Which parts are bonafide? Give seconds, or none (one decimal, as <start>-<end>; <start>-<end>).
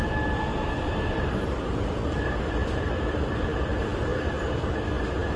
0.0-5.4